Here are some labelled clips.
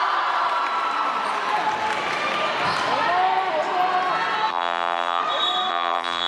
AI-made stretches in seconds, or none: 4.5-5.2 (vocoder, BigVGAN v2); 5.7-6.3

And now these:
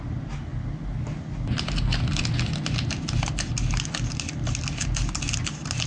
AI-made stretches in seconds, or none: none

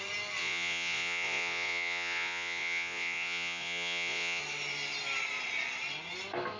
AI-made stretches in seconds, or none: 0.4-4.4 (vocoder, Vocos)

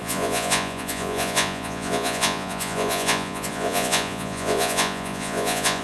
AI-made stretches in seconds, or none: 0.0-5.8 (vocoder, Vocos)

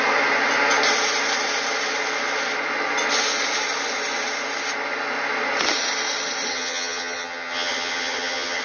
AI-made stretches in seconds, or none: 6.5-8.6 (vocoder, HiFi-GAN)

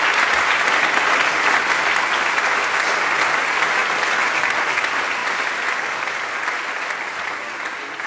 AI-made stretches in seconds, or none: none

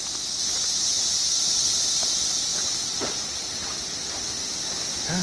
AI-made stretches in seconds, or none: none

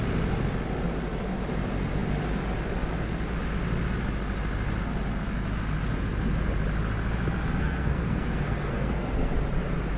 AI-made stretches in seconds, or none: 7.6-9.3 (codec, SNAC)